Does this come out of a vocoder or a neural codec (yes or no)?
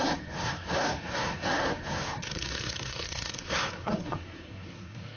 yes